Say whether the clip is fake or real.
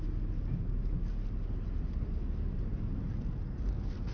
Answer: real